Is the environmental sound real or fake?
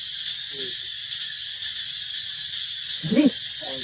real